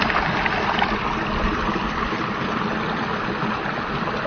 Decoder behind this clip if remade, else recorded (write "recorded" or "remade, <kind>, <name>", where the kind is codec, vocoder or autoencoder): recorded